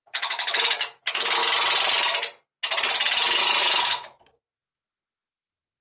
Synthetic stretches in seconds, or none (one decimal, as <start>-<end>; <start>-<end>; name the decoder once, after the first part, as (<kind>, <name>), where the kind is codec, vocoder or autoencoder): 0.0-1.4 (autoencoder, DAC-VAE); 3.6-5.8